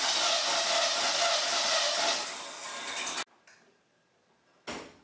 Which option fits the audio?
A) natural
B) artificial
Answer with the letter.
A